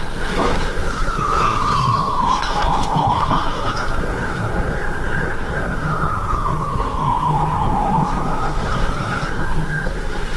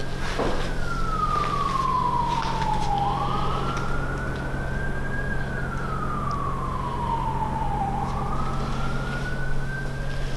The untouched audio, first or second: second